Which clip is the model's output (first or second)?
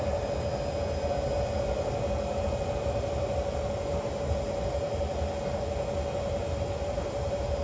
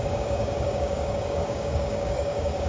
second